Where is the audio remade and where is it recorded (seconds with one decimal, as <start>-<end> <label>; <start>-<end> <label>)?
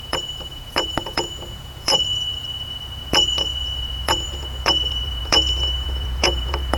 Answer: 0.0-6.8 remade